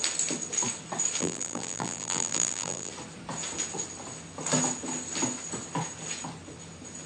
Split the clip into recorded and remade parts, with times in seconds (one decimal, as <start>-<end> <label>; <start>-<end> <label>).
0.0-1.2 recorded; 1.2-2.9 remade; 2.9-7.1 recorded

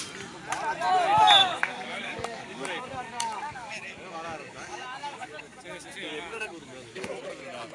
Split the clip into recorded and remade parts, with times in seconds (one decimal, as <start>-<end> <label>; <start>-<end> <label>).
0.0-1.4 recorded; 1.4-5.6 remade; 5.6-6.1 recorded; 6.1-7.2 remade; 7.2-7.7 recorded

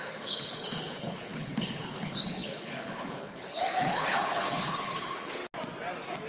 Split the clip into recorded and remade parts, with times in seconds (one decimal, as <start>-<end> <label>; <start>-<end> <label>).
0.0-5.4 remade; 5.4-6.3 recorded

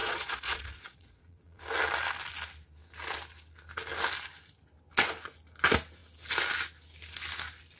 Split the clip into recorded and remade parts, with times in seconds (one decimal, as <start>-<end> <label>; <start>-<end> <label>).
0.0-1.6 remade; 1.6-7.8 recorded

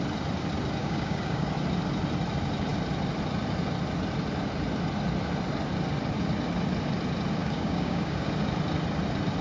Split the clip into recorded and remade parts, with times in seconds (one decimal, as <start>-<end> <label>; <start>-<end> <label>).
0.0-0.8 recorded; 0.8-1.5 remade; 1.5-7.4 recorded; 7.4-8.3 remade; 8.3-9.4 recorded